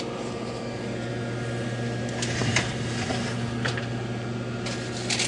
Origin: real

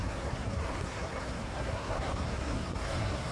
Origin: fake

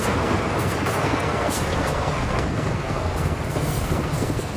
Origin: fake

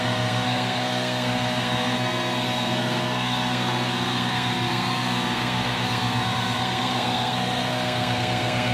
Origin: fake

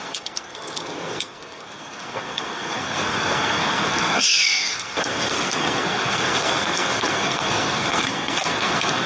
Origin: fake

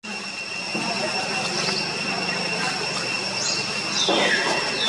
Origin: real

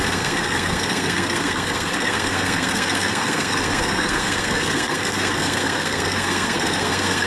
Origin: fake